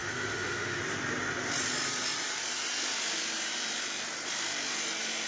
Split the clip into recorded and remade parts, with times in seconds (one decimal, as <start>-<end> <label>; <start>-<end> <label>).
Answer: 0.0-0.8 remade; 0.8-5.3 recorded